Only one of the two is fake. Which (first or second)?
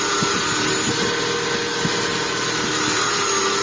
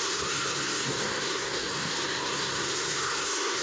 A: second